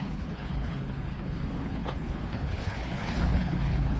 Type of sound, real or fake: fake